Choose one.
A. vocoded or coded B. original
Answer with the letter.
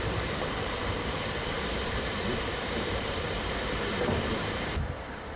A